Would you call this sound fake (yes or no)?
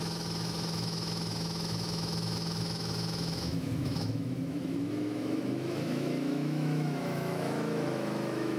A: yes